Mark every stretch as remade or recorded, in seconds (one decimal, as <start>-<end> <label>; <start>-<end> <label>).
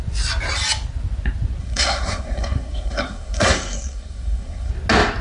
0.0-1.6 recorded; 1.6-4.7 remade; 4.7-5.2 recorded